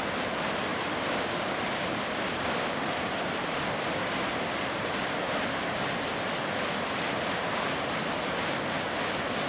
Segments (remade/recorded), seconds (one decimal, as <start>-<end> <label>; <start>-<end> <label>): 0.0-0.7 recorded; 0.7-5.2 remade; 5.2-9.5 recorded